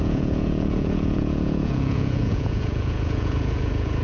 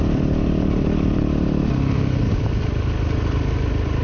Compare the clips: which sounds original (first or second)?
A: second